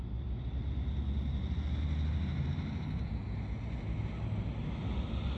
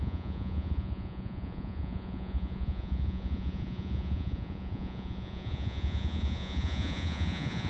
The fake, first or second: second